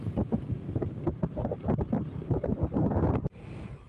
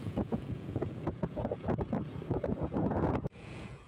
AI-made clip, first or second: second